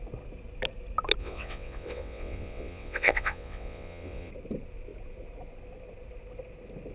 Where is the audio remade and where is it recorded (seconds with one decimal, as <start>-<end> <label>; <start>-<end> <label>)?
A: 0.0-1.2 recorded; 1.2-4.3 remade; 4.3-6.9 recorded